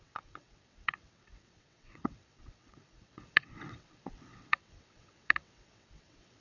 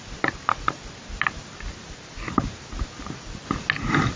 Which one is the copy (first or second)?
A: first